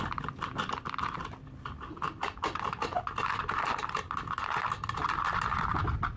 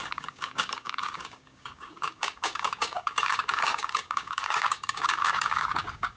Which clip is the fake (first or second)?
second